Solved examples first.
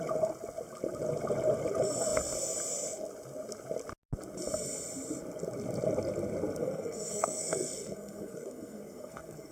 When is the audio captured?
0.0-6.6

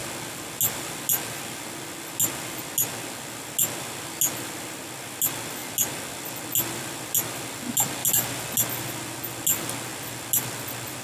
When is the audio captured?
0.0-11.0

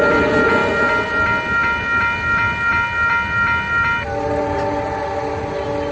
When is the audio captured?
0.0-5.9

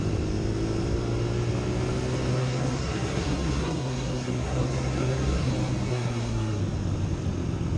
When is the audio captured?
0.0-2.3; 5.5-5.9; 6.6-7.8

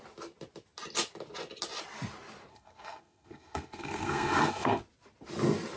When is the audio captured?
0.0-2.5; 4.8-5.8

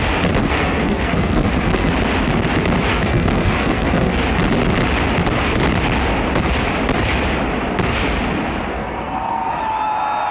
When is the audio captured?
0.0-0.4; 1.9-2.9; 4.2-8.7; 9.5-10.3

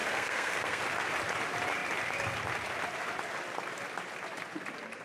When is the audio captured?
0.8-5.0

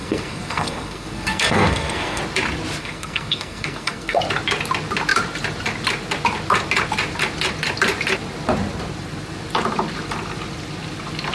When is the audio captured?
2.2-2.8; 4.2-11.3